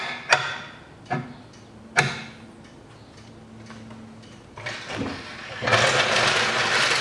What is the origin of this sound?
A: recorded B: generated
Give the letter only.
A